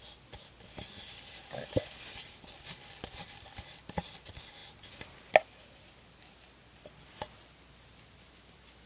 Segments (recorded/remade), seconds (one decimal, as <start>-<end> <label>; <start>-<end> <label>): 0.0-8.9 recorded